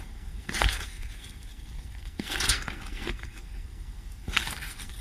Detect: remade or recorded remade